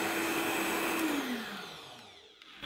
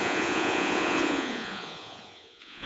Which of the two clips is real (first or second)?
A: first